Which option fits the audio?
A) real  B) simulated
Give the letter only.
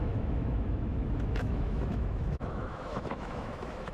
B